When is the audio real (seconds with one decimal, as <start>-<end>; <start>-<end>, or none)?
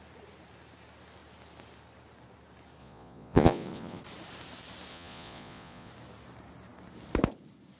0.0-2.8; 4.0-4.9; 5.9-7.8